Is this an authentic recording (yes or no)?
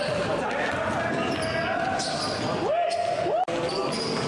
yes